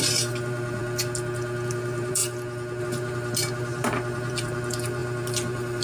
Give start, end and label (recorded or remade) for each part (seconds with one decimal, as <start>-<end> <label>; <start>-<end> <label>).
0.0-0.8 remade; 0.8-1.7 recorded; 1.7-2.2 remade; 2.2-2.8 recorded; 2.8-5.8 remade